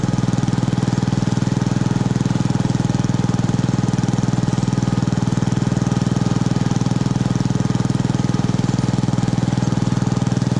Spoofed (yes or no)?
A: no